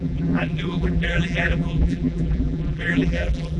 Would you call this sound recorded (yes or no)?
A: no